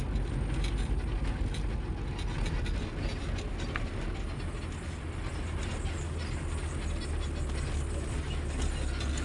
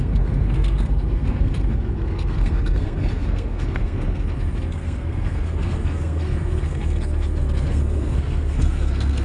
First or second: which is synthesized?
second